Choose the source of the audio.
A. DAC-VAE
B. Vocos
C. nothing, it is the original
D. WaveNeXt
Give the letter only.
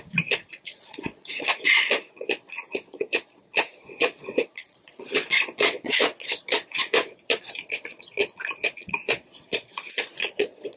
B